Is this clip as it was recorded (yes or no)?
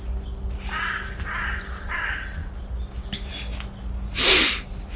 yes